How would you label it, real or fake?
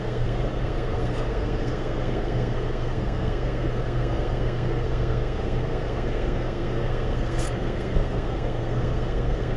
fake